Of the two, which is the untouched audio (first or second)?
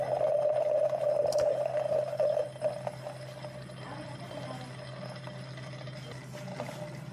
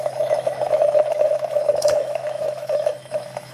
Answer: first